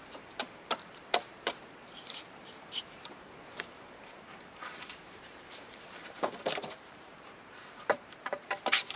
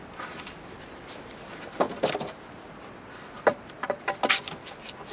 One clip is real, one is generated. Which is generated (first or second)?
first